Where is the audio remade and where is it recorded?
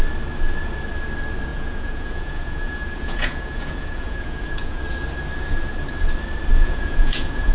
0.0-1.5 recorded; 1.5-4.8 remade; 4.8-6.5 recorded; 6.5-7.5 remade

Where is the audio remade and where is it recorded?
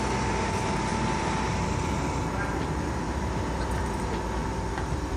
0.0-0.9 recorded; 0.9-3.3 remade; 3.3-4.4 recorded; 4.4-5.2 remade